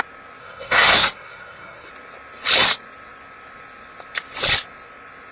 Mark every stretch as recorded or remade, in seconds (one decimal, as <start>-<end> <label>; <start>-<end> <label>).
0.0-0.4 recorded; 0.4-1.9 remade; 1.9-5.3 recorded